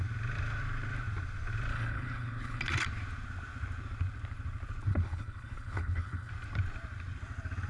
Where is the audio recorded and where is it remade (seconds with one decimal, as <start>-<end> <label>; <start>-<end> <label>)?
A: 0.0-1.7 recorded; 1.7-2.6 remade; 2.6-4.9 recorded; 4.9-6.3 remade; 6.3-7.7 recorded